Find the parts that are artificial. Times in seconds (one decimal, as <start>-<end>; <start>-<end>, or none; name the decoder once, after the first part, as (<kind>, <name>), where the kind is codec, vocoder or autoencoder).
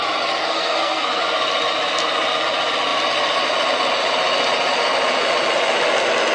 0.4-1.2 (codec, SNAC)